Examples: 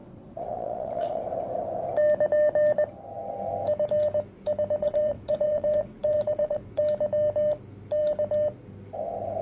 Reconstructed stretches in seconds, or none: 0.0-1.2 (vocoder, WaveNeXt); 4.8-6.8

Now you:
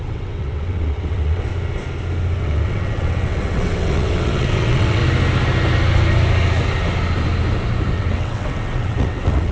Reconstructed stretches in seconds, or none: 0.0-1.5 (vocoder, WaveNeXt); 2.4-5.0; 7.9-9.5

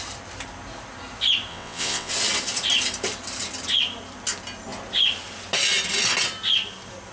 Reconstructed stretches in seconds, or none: 1.5-2.1 (vocoder, WaveNeXt)

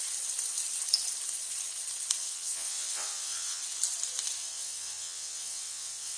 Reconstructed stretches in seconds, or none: 2.2-3.6 (vocoder, WaveNeXt); 4.4-6.2

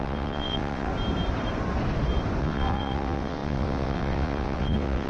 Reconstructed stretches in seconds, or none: 0.0-0.9 (vocoder, WaveNeXt); 2.4-5.1

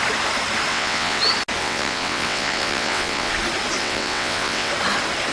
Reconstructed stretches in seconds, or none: 0.7-1.2 (vocoder, WaveNeXt); 1.6-3.3; 3.8-4.7